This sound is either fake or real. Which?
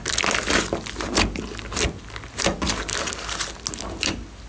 real